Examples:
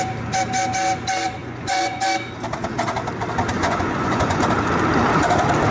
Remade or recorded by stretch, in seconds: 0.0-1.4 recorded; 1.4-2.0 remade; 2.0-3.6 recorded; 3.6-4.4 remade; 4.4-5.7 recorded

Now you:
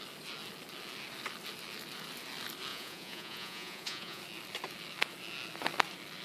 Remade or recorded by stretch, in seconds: 0.0-2.7 recorded; 2.7-4.2 remade; 4.2-6.2 recorded

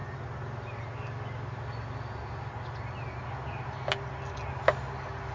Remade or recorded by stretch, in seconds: 0.0-5.3 recorded

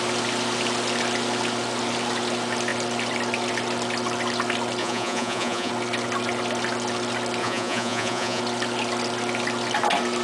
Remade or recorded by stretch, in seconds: 0.0-4.8 recorded; 4.8-5.7 remade; 5.7-7.4 recorded; 7.4-8.4 remade; 8.4-10.2 recorded